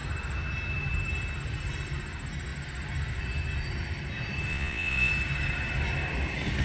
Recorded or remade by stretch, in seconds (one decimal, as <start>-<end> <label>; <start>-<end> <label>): 0.0-4.5 recorded; 4.5-5.1 remade; 5.1-6.6 recorded

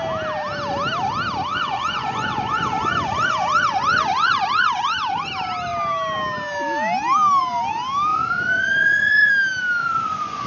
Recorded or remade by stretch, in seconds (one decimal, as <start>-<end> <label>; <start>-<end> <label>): 0.0-1.5 recorded; 1.5-5.3 remade; 5.3-8.1 recorded; 8.1-9.3 remade; 9.3-9.8 recorded; 9.8-10.5 remade